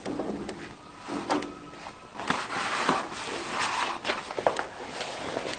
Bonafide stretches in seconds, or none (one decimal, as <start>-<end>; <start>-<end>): 0.0-5.6